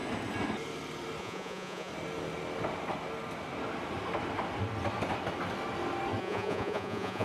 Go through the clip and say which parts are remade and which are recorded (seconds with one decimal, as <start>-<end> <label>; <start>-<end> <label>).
0.0-1.2 recorded; 1.2-1.9 remade; 1.9-6.2 recorded; 6.2-7.2 remade